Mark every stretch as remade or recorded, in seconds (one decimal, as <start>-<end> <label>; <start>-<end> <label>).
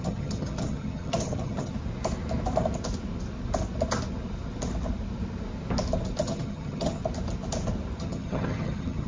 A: 0.0-1.7 remade; 1.7-6.2 recorded; 6.2-7.0 remade; 7.0-8.0 recorded; 8.0-9.1 remade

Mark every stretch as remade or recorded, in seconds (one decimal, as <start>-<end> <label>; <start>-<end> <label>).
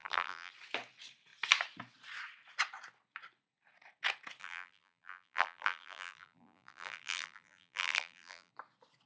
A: 0.0-0.5 remade; 0.5-4.4 recorded; 4.4-8.5 remade; 8.5-9.1 recorded